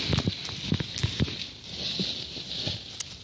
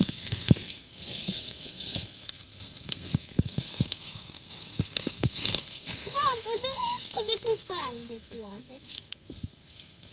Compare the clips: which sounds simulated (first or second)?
second